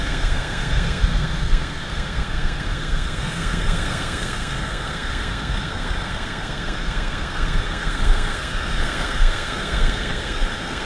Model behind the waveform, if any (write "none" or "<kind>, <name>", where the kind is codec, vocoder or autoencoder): codec, SNAC